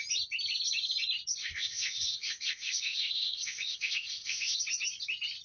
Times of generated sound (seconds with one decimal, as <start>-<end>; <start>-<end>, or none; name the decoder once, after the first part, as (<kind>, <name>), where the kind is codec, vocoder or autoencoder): 1.4-4.6 (codec, ZipCodec)